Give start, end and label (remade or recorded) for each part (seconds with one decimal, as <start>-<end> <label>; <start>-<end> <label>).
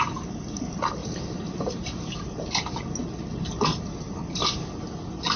0.0-1.0 recorded; 1.0-2.8 remade; 2.8-5.4 recorded